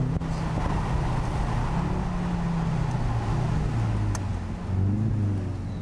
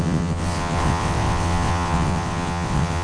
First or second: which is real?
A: first